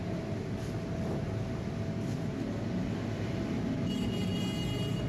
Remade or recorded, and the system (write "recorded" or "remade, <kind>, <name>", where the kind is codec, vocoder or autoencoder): recorded